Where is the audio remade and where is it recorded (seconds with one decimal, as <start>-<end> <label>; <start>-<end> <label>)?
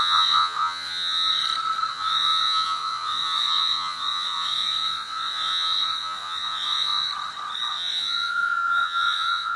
0.0-1.4 remade; 1.4-1.9 recorded; 1.9-7.1 remade; 7.1-7.7 recorded; 7.7-9.6 remade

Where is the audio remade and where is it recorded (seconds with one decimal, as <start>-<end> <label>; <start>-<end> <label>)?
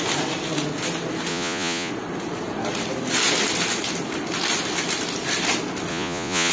0.0-1.3 recorded; 1.3-1.9 remade; 1.9-5.9 recorded; 5.9-6.5 remade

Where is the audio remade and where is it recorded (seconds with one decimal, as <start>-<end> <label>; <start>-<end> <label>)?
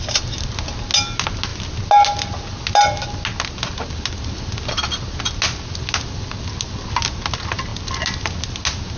0.0-9.0 recorded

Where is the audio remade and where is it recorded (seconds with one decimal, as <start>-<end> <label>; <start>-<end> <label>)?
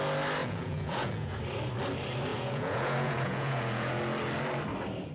0.0-0.4 recorded; 0.4-1.4 remade; 1.4-2.3 recorded; 2.3-4.0 remade; 4.0-5.1 recorded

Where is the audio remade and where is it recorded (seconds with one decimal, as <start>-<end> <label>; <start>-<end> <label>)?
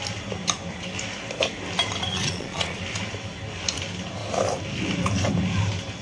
0.0-2.1 recorded; 2.1-2.8 remade; 2.8-6.0 recorded